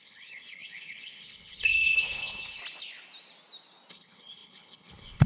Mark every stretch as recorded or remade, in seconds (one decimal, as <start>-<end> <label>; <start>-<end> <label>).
0.0-2.6 remade; 2.6-3.9 recorded; 3.9-5.3 remade